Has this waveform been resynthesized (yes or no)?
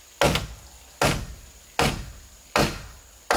no